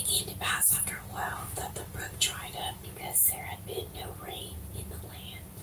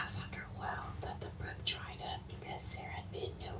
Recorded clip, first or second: second